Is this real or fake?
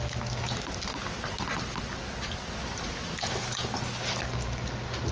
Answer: real